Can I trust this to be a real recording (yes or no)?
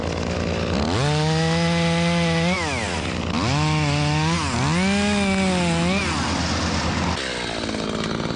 yes